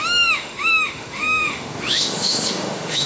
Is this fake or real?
fake